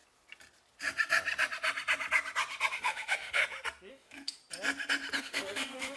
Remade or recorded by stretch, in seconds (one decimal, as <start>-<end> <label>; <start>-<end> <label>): 0.0-2.7 recorded; 2.7-3.4 remade; 3.4-3.9 recorded; 3.9-4.4 remade; 4.4-5.2 recorded; 5.2-6.0 remade

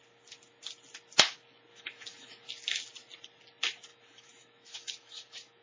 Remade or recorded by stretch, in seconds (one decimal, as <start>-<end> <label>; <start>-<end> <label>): 0.0-1.7 recorded; 1.7-2.5 remade; 2.5-3.9 recorded; 3.9-5.6 remade

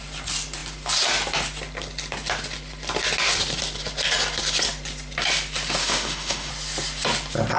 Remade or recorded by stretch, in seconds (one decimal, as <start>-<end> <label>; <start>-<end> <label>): 0.0-5.8 recorded; 5.8-6.5 remade; 6.5-7.6 recorded